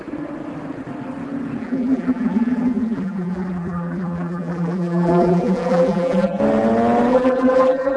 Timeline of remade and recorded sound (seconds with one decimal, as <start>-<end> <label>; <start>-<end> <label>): 0.0-1.6 recorded; 1.6-6.4 remade; 6.4-7.1 recorded; 7.1-8.0 remade